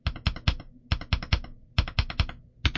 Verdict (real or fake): real